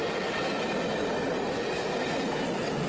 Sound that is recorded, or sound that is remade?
recorded